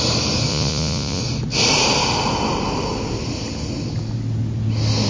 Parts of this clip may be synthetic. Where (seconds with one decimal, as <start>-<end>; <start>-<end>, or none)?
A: 0.5-1.2